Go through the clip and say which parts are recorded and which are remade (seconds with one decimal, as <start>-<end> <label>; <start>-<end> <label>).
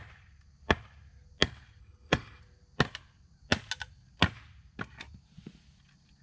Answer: 0.0-1.8 recorded; 1.8-2.4 remade; 2.4-6.2 recorded